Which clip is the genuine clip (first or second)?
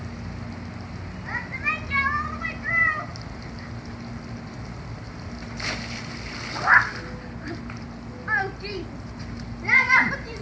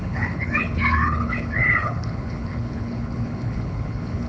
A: first